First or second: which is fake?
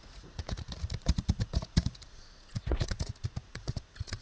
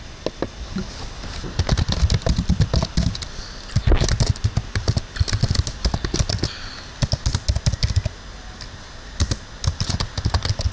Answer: first